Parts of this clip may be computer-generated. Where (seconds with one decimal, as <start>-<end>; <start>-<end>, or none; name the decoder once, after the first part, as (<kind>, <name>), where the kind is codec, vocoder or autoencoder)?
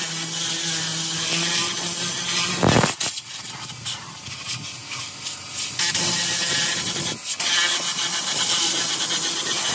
none